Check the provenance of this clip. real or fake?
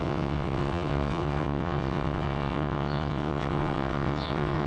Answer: fake